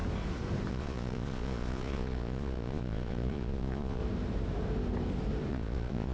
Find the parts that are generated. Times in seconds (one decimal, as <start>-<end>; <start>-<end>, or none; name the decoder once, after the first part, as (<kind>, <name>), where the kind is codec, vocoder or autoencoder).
0.7-4.0 (vocoder, Vocos); 5.5-6.1